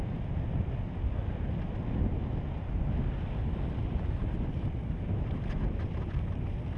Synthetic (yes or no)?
no